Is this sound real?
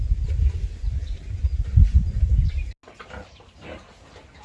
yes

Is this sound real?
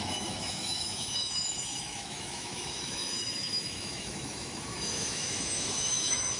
no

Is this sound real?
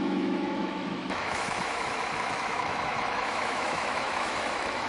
no